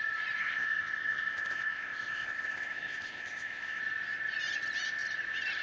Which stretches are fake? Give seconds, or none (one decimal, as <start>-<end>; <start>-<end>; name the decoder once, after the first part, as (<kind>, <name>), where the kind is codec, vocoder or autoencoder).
0.4-3.8 (codec, ZipCodec)

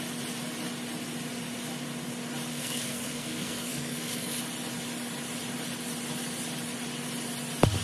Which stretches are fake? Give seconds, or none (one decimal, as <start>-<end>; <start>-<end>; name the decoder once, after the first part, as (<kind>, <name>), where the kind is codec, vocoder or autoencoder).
2.5-4.4 (codec, SNAC)

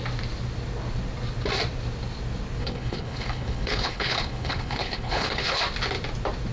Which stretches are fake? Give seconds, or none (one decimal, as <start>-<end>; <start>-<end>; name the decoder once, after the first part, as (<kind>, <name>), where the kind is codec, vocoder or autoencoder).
2.6-5.6 (codec, HILCodec)

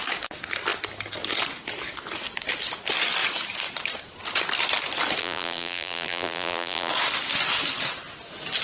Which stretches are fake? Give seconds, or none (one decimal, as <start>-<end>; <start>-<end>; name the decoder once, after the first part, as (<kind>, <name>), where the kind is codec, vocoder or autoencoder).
5.2-6.9 (vocoder, BigVGAN v2)

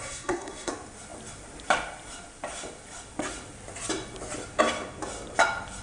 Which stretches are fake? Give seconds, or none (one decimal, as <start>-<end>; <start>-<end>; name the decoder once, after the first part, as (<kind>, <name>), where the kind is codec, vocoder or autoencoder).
0.0-0.7 (codec, SNAC)

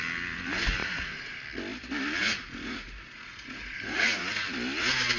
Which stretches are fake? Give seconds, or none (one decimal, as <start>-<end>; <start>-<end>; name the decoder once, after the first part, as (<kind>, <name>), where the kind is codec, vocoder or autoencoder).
0.8-1.4 (vocoder, Vocos); 2.2-4.2

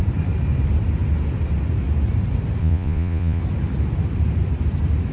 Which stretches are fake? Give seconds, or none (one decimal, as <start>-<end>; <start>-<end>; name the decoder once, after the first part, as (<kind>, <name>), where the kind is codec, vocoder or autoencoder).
2.6-3.4 (vocoder, Vocos)